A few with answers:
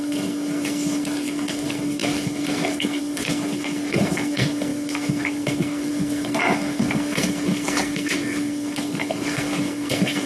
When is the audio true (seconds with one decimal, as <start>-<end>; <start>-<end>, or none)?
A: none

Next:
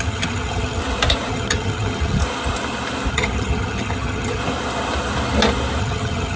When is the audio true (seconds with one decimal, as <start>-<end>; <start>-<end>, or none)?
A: 0.8-1.3; 2.2-3.1; 4.4-5.8

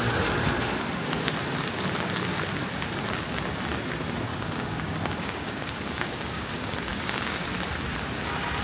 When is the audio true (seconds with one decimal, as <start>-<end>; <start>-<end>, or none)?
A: 0.0-4.3; 6.5-6.9; 7.4-8.6

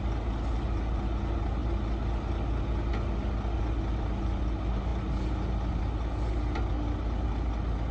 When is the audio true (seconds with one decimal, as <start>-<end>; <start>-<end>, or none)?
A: 0.0-7.9

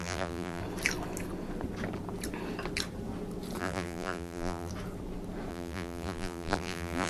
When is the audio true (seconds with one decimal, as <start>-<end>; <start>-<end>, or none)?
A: 0.6-3.6; 4.7-5.5

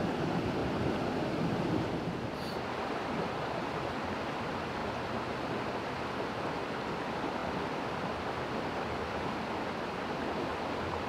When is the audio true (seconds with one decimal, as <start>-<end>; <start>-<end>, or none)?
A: 0.0-0.6; 3.2-4.8; 6.6-7.4; 8.6-10.5

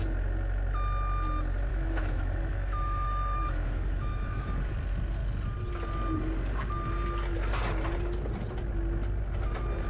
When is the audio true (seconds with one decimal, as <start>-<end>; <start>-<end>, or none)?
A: 0.0-1.7; 4.7-9.9